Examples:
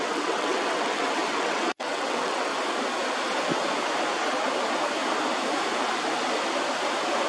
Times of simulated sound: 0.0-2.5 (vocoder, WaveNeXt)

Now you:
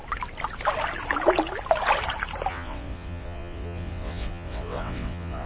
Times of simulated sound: 2.5-5.5 (vocoder, WaveNeXt)

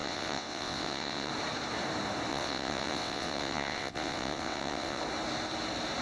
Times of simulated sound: 0.0-1.3 (vocoder, WaveNeXt); 2.3-5.0

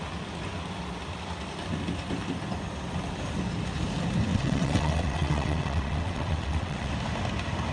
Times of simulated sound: 4.3-6.9 (vocoder, WaveNeXt)

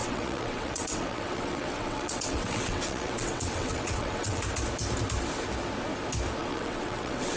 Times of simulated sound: 0.0-4.4 (vocoder, WaveNeXt); 6.4-7.4

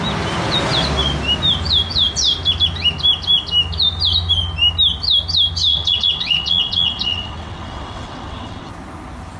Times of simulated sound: 5.7-8.7 (vocoder, WaveNeXt)

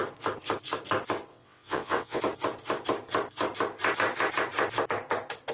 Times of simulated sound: 1.3-2.2 (vocoder, WaveNeXt)